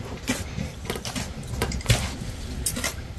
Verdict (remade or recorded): recorded